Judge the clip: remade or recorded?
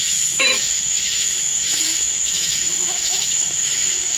remade